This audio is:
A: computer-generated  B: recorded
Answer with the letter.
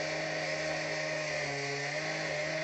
B